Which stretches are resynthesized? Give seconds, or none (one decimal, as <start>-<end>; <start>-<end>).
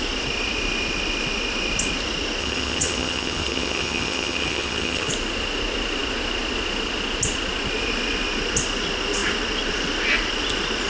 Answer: 2.4-5.1